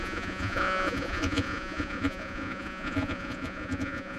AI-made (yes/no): yes